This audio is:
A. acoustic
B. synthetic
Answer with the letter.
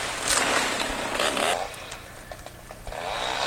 A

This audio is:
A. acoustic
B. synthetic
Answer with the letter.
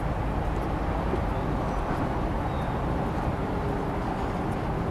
A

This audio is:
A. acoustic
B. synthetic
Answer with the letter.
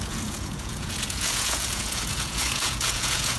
B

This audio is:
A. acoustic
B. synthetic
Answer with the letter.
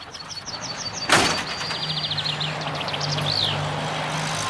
A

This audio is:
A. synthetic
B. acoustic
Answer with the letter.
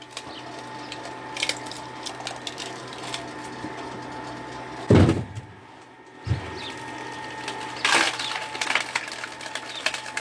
B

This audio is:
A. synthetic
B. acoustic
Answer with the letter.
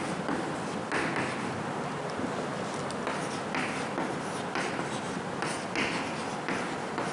B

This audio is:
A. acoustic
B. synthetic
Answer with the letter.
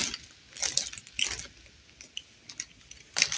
A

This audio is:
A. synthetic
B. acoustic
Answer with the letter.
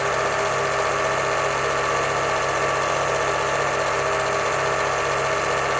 B